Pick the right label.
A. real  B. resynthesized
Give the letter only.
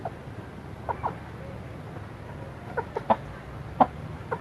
A